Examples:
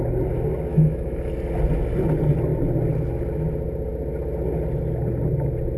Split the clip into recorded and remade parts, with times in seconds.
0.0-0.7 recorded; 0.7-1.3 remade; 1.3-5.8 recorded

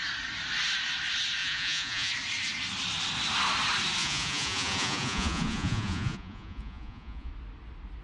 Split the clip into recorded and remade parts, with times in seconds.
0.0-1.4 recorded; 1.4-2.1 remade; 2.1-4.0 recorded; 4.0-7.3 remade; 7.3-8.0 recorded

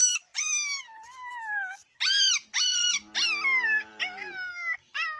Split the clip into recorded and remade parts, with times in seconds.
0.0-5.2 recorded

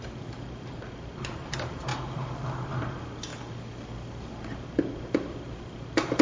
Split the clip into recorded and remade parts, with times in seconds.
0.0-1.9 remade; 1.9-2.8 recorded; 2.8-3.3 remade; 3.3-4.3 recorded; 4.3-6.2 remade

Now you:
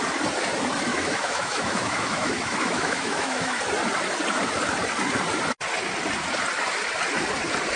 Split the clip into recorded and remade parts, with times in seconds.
0.0-0.9 recorded; 0.9-3.6 remade; 3.6-7.8 recorded

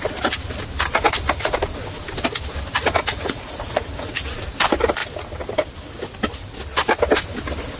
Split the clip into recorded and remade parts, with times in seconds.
0.0-2.8 recorded; 2.8-4.1 remade; 4.1-7.8 recorded